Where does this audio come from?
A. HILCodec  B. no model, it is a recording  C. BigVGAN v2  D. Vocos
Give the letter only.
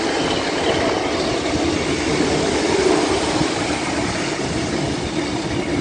B